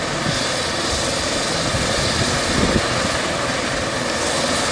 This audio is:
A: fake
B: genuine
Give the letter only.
B